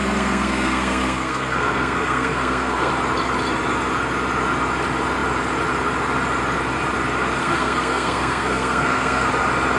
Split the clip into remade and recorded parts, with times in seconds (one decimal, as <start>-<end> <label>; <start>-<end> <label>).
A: 0.0-2.9 remade; 2.9-7.4 recorded; 7.4-9.3 remade; 9.3-9.8 recorded